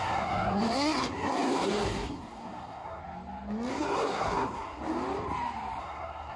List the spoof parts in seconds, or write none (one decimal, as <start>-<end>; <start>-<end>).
0.0-3.0; 3.7-4.8; 5.8-6.4